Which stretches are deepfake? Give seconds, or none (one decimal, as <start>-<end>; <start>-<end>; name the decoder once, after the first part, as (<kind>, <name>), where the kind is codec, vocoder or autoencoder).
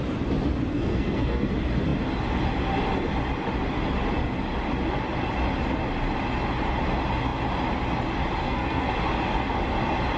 0.7-1.5 (codec, SNAC); 8.4-8.9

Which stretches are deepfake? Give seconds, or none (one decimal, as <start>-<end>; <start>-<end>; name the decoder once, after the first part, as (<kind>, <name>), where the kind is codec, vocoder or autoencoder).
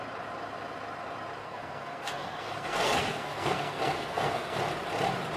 1.4-4.6 (codec, SNAC)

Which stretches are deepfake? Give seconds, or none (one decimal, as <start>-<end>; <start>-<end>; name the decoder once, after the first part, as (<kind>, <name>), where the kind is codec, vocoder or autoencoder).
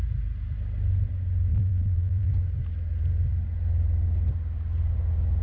1.5-2.3 (vocoder, BigVGAN v2)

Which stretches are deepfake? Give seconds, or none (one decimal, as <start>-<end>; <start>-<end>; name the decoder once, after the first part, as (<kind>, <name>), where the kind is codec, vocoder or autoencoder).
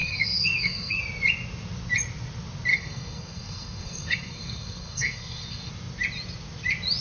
0.0-1.0 (codec, SNAC); 2.7-5.7